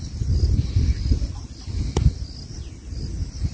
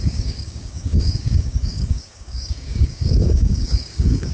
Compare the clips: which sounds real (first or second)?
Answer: first